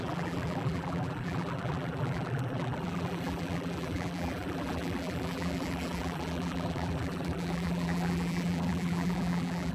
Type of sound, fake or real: fake